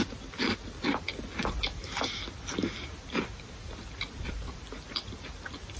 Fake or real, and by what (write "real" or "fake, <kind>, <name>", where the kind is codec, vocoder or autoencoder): real